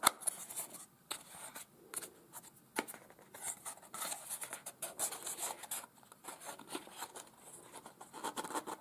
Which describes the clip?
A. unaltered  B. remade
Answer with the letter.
A